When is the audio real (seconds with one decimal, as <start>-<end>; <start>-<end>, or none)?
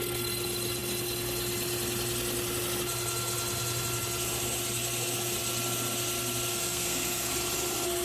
0.0-6.5; 7.3-8.0